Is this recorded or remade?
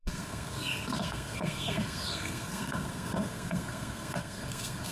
remade